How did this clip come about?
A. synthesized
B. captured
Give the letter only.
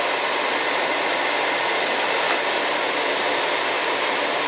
B